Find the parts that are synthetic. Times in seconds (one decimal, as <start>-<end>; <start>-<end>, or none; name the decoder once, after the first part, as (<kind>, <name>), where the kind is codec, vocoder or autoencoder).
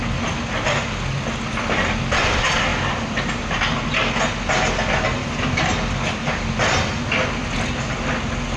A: none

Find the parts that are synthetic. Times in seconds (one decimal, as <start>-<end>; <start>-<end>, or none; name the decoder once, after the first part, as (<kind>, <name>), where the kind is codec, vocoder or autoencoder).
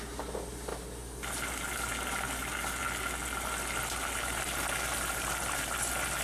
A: none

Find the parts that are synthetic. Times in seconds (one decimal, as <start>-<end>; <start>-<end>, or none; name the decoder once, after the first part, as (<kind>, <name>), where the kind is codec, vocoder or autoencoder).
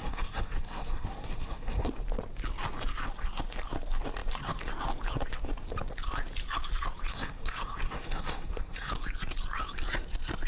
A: 0.0-1.9 (codec, SNAC); 7.1-8.9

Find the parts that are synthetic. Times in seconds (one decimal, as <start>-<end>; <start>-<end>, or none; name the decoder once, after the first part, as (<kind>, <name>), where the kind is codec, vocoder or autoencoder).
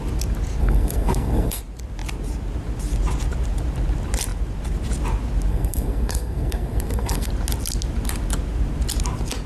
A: 0.6-1.6 (codec, SNAC); 5.5-7.3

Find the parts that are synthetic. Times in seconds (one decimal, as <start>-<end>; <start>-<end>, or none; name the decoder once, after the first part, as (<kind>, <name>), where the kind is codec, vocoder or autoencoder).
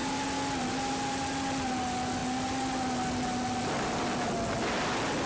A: none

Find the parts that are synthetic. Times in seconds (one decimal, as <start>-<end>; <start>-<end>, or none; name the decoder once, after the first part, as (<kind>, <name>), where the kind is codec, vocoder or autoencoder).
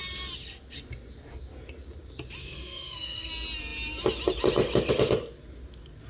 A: 2.4-3.3 (codec, SNAC)